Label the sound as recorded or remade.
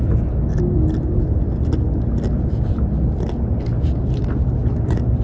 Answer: recorded